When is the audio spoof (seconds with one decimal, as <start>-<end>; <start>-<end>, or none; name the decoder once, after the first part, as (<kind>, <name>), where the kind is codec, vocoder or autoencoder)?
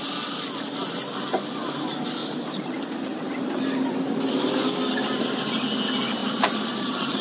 2.2-4.1 (vocoder, BigVGAN v2); 6.2-7.2